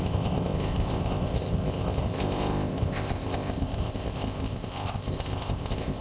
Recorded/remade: remade